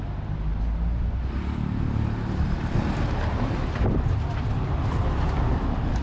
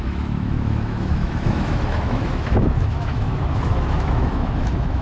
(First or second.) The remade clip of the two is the second